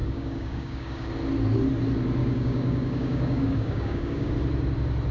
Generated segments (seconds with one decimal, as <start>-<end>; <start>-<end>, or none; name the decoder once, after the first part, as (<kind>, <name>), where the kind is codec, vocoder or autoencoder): 0.0-1.1 (codec, DAC); 2.2-4.3